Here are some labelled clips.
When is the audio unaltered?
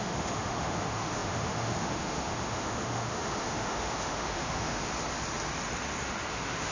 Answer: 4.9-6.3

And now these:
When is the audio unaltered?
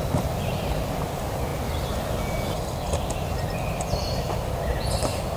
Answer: 0.0-5.4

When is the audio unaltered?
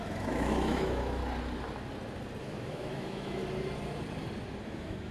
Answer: 1.2-2.4; 3.4-4.6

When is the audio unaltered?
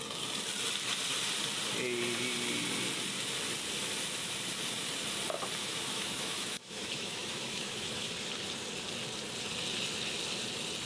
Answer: 0.0-5.6; 8.1-10.9